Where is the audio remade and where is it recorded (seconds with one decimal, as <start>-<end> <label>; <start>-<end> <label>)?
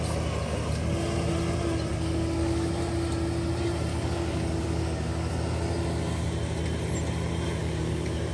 0.0-1.9 recorded; 1.9-2.7 remade; 2.7-3.9 recorded; 3.9-5.3 remade; 5.3-7.6 recorded; 7.6-8.3 remade